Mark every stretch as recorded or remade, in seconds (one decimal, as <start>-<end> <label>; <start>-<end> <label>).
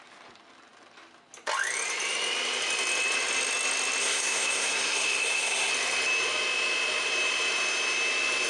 0.0-4.0 recorded; 4.0-5.7 remade; 5.7-8.5 recorded